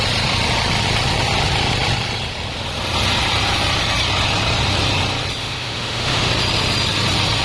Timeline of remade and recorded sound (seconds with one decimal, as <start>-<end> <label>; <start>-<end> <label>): 0.0-5.4 recorded; 5.4-6.3 remade; 6.3-7.4 recorded